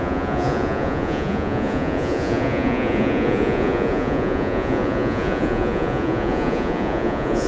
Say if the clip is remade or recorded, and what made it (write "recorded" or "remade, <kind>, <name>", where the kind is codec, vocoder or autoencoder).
remade, vocoder, Vocos